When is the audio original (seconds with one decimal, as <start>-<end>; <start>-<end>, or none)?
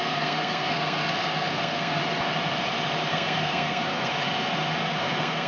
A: 2.0-3.1; 4.1-4.8